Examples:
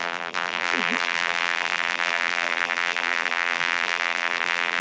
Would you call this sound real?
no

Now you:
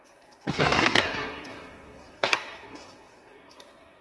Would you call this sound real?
no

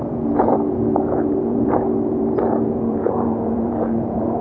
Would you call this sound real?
no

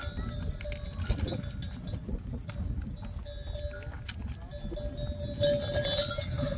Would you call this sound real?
yes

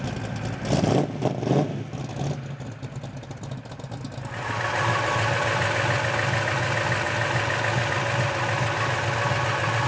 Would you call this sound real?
yes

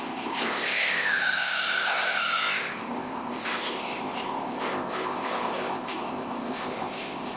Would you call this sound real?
no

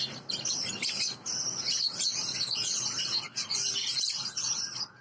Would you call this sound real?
yes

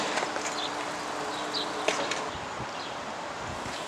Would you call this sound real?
yes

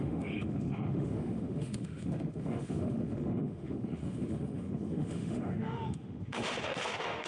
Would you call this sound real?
no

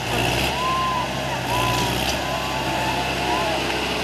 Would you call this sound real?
yes